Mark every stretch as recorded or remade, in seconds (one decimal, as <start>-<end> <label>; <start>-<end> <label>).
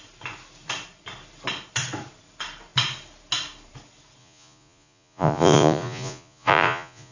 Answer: 0.0-4.2 recorded; 4.2-7.1 remade